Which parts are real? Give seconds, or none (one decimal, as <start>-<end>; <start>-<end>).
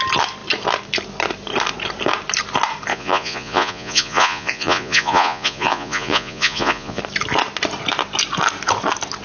0.0-2.9; 7.0-9.2